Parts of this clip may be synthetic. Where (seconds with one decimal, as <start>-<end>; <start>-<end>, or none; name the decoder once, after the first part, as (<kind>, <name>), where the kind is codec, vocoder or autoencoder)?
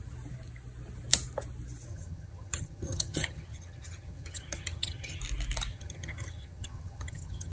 1.9-5.2 (vocoder, HiFi-GAN); 5.7-7.5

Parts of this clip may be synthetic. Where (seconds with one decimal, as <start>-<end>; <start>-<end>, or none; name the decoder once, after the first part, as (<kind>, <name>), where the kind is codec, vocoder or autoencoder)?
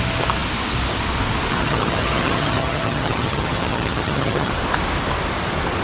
1.5-4.5 (vocoder, HiFi-GAN)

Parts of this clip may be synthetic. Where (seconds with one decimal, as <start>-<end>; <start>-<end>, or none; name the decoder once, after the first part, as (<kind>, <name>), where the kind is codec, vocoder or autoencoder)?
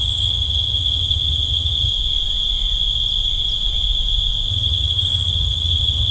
0.0-1.9 (vocoder, HiFi-GAN); 4.5-6.1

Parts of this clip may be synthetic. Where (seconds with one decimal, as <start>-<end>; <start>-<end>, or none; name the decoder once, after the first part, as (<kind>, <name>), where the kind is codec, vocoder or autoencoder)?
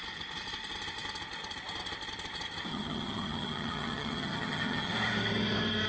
2.7-4.9 (vocoder, HiFi-GAN)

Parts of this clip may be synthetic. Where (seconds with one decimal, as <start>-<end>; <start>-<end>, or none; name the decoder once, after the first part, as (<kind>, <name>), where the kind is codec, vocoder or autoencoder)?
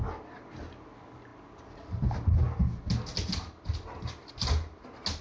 none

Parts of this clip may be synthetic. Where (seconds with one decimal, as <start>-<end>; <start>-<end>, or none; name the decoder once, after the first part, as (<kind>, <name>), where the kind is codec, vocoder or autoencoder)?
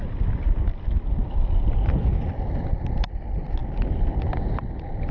none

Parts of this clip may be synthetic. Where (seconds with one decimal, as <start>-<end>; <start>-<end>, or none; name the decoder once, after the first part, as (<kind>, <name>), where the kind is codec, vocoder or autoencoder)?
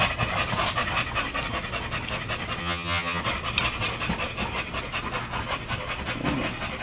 2.6-3.2 (vocoder, HiFi-GAN)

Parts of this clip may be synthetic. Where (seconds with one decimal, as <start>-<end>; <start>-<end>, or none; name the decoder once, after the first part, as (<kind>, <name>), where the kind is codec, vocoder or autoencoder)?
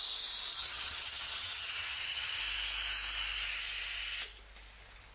0.5-2.4 (vocoder, HiFi-GAN)